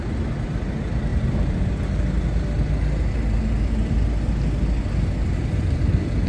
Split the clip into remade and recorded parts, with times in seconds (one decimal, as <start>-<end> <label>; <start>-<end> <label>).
0.0-6.3 recorded